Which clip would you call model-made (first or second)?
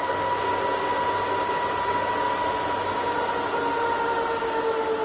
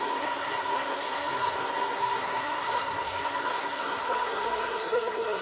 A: second